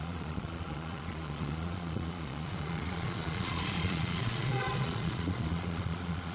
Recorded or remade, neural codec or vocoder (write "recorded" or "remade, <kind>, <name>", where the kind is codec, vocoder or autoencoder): remade, vocoder, Vocos